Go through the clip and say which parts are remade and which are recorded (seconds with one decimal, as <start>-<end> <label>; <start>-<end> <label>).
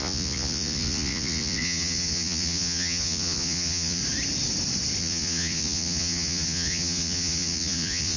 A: 0.0-4.0 remade; 4.0-5.0 recorded; 5.0-8.2 remade